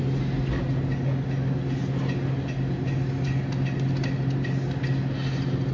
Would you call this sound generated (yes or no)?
no